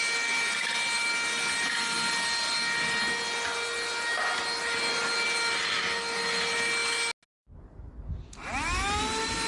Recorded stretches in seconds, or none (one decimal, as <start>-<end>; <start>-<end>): 0.0-9.5